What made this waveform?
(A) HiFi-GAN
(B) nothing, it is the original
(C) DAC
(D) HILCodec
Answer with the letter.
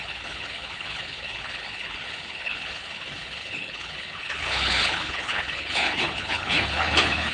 D